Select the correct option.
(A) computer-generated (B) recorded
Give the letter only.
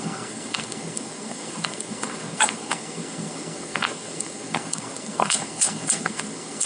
A